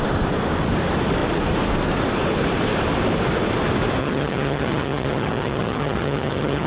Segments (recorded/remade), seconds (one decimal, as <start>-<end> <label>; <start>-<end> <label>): 0.0-4.0 recorded; 4.0-6.7 remade